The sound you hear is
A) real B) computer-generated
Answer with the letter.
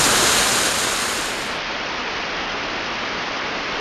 B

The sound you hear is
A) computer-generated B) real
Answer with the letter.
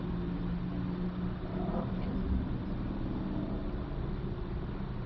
B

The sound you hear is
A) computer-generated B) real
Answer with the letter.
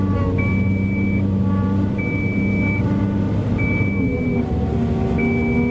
B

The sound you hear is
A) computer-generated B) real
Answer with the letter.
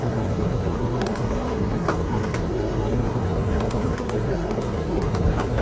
A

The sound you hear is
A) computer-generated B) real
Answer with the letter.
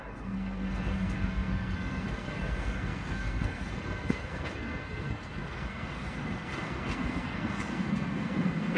A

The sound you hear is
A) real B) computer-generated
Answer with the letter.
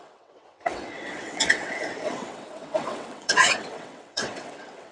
B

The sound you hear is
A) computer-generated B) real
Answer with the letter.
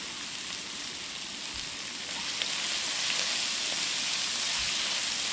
B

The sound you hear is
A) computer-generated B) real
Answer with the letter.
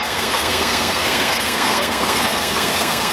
A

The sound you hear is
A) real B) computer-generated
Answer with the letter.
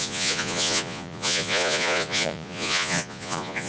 B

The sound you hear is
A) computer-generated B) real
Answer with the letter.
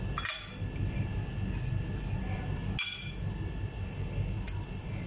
B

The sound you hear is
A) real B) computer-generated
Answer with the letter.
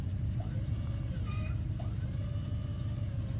B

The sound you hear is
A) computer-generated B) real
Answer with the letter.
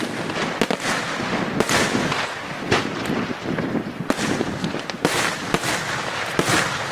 B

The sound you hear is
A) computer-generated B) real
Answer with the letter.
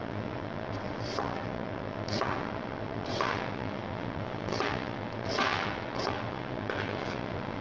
A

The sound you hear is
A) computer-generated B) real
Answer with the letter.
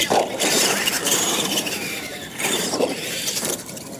A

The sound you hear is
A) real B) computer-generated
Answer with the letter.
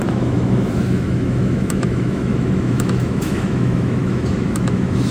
B